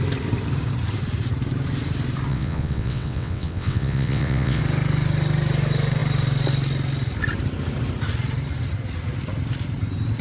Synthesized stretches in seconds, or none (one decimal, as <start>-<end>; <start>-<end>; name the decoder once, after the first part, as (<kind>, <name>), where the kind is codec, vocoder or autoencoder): 2.3-4.6 (vocoder, WaveNeXt)

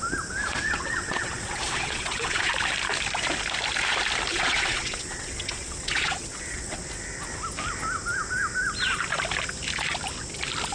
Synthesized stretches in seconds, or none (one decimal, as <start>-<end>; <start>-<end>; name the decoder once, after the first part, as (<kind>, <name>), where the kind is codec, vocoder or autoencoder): 0.5-2.5 (vocoder, WaveNeXt); 4.3-6.8